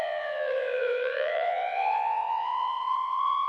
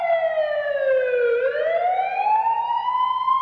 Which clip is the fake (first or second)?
first